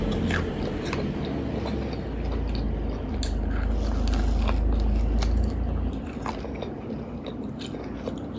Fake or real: real